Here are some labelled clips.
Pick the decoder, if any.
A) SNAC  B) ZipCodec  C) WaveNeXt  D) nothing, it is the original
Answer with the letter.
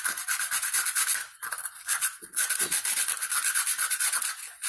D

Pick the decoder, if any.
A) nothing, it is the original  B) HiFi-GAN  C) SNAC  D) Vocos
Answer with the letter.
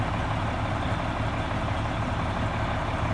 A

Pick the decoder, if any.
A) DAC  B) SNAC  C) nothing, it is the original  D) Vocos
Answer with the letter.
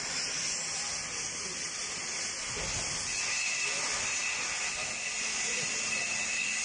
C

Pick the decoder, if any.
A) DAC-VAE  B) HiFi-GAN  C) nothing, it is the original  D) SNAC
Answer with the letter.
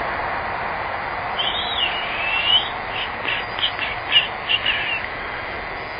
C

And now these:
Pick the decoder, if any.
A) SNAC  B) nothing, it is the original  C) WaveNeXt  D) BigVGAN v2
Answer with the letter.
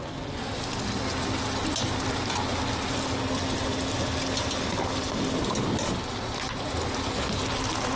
B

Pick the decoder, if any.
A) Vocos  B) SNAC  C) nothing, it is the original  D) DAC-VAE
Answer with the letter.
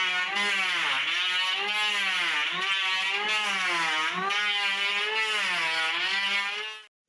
C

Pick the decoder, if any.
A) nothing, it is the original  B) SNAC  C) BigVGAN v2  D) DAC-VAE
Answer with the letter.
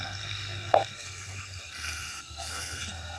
B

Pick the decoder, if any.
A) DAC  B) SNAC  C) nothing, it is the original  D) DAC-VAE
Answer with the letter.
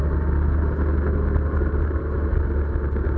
C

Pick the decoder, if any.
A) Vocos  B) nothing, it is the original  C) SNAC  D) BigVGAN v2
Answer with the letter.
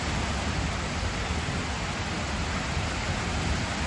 B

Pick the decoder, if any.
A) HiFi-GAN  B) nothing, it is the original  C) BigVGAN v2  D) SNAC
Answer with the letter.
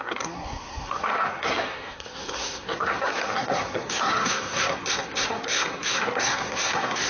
D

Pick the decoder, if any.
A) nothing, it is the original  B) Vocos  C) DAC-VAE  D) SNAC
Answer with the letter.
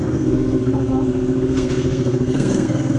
D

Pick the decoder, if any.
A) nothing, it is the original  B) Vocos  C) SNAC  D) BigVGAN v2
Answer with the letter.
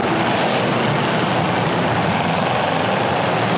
A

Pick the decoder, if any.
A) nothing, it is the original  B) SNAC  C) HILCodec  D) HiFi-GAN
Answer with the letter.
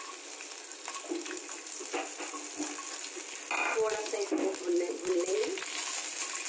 A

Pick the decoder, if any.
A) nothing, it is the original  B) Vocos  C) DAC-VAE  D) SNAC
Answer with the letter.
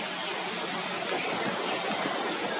A